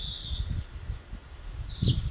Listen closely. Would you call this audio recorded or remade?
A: recorded